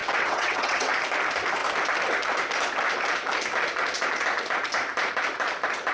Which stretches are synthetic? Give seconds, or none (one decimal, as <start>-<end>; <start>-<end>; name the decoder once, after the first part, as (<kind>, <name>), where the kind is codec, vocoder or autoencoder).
0.0-0.9 (vocoder, WaveNeXt)